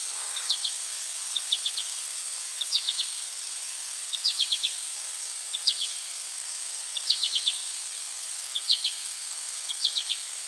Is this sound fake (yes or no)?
yes